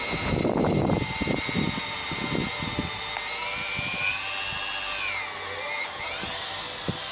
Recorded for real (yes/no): yes